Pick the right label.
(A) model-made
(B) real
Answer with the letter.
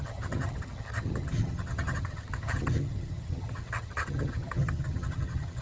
A